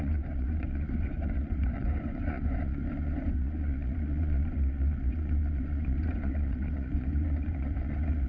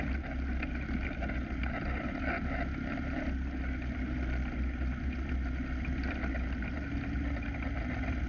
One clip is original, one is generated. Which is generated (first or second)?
first